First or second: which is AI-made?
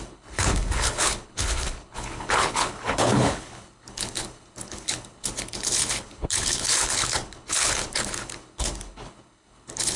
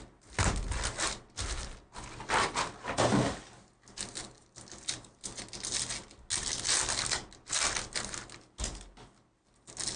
first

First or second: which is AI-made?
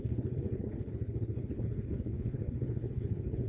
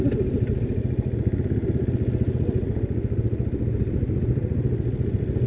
first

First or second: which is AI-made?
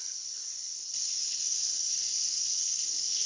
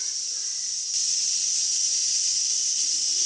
first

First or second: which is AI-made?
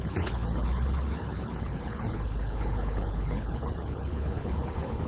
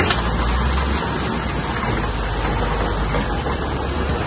first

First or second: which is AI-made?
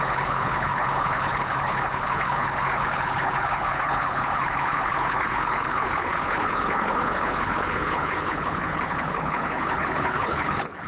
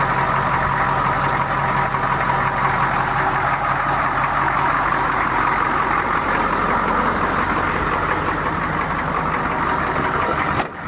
first